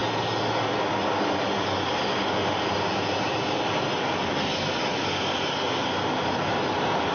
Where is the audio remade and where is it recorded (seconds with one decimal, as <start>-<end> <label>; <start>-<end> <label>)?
0.0-7.1 recorded